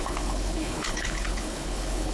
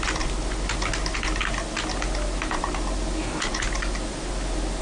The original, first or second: second